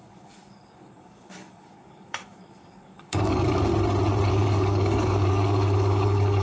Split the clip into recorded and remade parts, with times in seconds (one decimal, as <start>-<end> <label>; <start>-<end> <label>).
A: 0.0-3.7 remade; 3.7-4.3 recorded; 4.3-6.4 remade